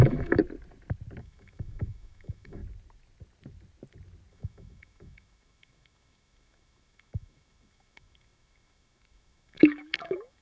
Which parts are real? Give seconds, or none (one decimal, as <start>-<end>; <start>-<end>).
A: 0.4-1.2; 2.6-4.3